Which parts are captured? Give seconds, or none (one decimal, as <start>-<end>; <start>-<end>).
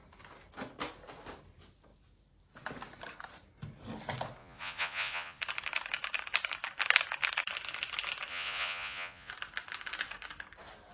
0.0-4.4; 5.4-8.3; 9.3-10.9